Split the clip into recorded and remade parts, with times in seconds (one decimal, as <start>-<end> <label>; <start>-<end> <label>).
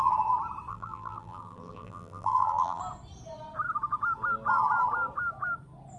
0.0-0.7 recorded; 0.7-2.8 remade; 2.8-6.0 recorded